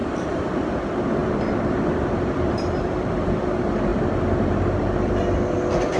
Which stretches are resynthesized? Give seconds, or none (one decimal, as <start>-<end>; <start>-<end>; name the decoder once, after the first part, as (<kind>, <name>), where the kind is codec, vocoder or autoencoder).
0.0-0.7 (vocoder, BigVGAN v2); 1.2-3.5; 3.9-5.2

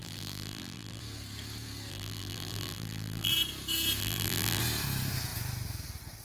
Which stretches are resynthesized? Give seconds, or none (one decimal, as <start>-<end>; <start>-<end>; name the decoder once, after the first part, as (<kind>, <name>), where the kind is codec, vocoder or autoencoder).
0.0-1.0 (vocoder, BigVGAN v2); 1.9-3.3; 4.0-4.6